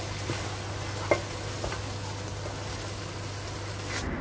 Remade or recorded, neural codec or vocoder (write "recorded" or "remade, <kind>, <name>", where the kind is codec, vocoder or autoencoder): recorded